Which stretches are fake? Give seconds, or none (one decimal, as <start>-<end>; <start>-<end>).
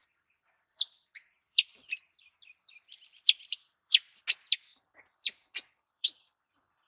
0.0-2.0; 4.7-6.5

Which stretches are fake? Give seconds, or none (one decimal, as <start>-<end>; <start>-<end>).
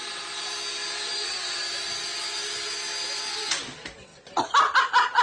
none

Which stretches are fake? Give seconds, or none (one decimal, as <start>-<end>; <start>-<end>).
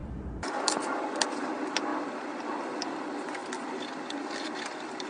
none